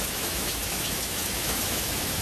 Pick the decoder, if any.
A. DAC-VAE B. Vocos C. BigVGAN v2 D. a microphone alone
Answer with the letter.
A